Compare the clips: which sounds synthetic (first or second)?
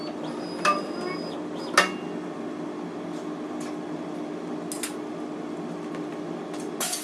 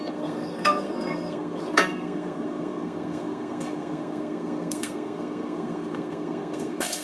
second